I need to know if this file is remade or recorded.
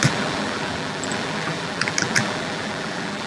remade